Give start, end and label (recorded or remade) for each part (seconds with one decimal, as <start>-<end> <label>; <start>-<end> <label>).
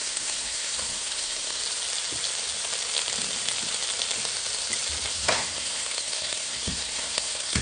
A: 0.0-1.6 remade; 1.6-5.1 recorded; 5.1-7.6 remade